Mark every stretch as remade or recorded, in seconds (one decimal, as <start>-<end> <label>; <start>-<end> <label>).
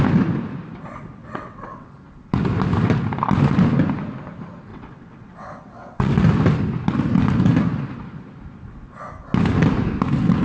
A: 0.0-1.2 recorded; 1.2-1.9 remade; 1.9-4.7 recorded; 4.7-6.1 remade; 6.1-10.4 recorded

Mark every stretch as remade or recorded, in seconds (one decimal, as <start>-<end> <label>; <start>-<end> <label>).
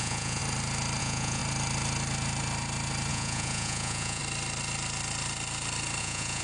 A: 0.0-0.4 remade; 0.4-1.0 recorded; 1.0-1.4 remade; 1.4-3.1 recorded; 3.1-4.2 remade; 4.2-6.0 recorded; 6.0-6.4 remade